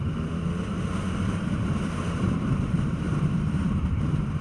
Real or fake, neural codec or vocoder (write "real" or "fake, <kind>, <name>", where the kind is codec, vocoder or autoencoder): fake, vocoder, BigVGAN v2